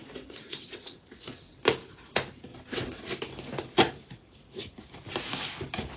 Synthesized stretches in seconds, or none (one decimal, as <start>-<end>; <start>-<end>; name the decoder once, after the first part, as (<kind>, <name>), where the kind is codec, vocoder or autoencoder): 0.0-1.6 (vocoder, WaveNeXt); 2.5-3.1